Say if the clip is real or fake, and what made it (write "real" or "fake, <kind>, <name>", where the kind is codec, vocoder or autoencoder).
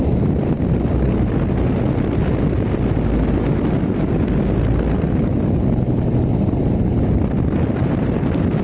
fake, vocoder, BigVGAN v2